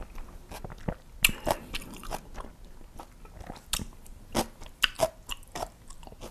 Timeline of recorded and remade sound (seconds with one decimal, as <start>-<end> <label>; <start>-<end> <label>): 0.0-6.3 recorded